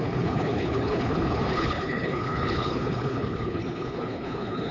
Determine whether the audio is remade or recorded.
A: remade